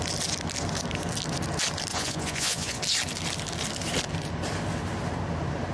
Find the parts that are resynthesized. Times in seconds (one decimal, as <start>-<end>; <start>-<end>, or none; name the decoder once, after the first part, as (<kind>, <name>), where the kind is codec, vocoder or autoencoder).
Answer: 1.9-2.8 (vocoder, Vocos)